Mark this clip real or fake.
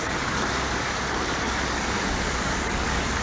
fake